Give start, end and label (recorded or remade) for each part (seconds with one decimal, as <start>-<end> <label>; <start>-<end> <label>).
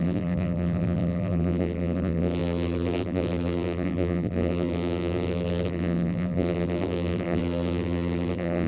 0.0-8.7 remade